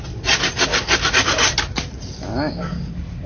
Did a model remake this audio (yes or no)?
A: no